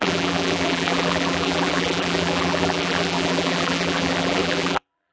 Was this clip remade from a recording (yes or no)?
yes